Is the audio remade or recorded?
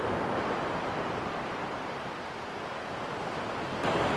recorded